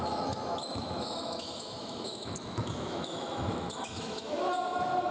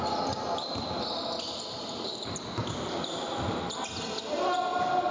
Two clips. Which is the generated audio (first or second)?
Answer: first